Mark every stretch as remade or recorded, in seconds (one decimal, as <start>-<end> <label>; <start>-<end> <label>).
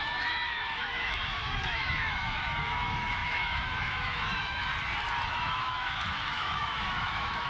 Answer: 0.0-4.7 remade; 4.7-5.3 recorded; 5.3-7.5 remade